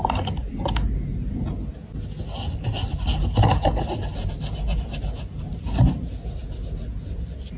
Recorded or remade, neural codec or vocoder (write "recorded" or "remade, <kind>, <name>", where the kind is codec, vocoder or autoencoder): recorded